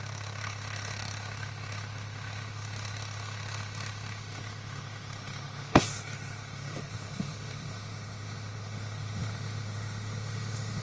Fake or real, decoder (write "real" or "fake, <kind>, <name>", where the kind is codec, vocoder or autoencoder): fake, autoencoder, DAC-VAE